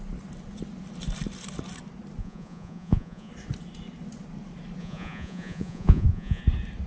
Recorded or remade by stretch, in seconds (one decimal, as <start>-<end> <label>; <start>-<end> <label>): 0.0-2.2 recorded; 2.2-3.3 remade; 3.3-4.8 recorded; 4.8-6.4 remade; 6.4-6.9 recorded